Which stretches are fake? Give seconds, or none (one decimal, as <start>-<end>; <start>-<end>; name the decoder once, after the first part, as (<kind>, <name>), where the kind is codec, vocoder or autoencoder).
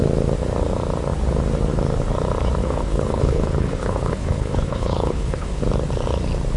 2.6-5.6 (codec, HILCodec)